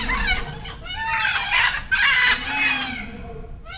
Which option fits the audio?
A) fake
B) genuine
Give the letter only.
B